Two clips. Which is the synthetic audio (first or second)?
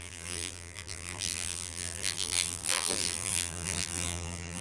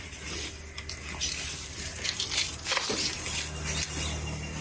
first